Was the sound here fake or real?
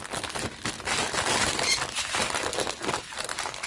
real